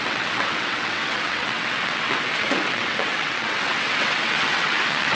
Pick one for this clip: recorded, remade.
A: remade